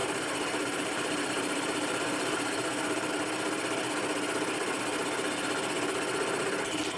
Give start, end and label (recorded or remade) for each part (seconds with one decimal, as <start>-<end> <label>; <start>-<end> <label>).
0.0-3.1 remade; 3.1-7.0 recorded